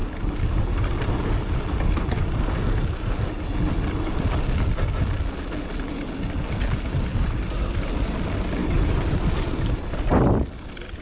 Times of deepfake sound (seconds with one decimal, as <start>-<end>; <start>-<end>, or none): 8.6-10.0